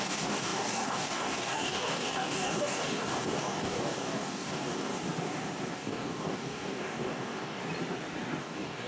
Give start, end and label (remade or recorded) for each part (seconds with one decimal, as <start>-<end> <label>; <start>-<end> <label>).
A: 0.0-4.9 remade; 4.9-5.7 recorded; 5.7-7.6 remade; 7.6-8.4 recorded; 8.4-8.9 remade